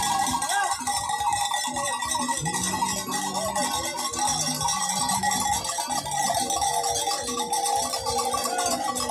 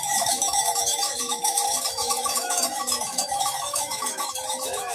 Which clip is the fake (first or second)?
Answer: second